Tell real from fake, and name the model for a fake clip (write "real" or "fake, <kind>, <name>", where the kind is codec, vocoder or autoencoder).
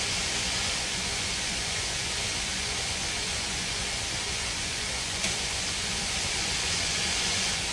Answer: fake, vocoder, Vocos